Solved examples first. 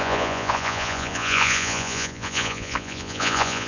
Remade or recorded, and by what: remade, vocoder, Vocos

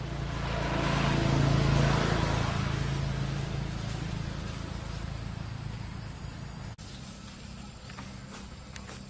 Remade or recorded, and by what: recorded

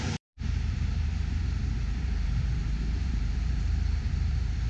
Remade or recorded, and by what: remade, vocoder, BigVGAN v2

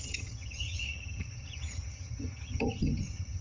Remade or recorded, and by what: remade, vocoder, HiFi-GAN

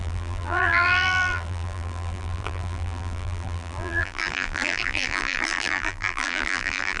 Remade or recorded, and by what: remade, vocoder, BigVGAN v2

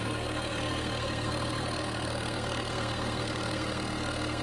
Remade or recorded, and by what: remade, codec, SNAC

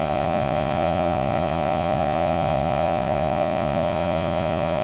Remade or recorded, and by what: remade, vocoder, Vocos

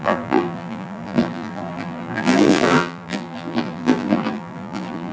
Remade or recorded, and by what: remade, vocoder, BigVGAN v2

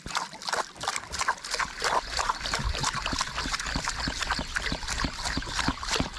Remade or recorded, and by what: recorded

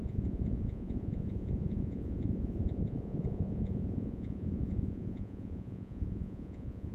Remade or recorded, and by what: remade, vocoder, Vocos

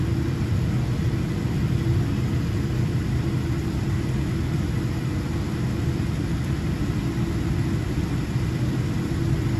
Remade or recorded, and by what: recorded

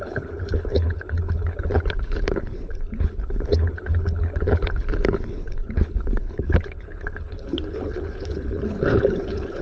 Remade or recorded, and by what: remade, codec, HILCodec